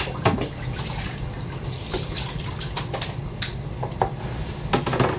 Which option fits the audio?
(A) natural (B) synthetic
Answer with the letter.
A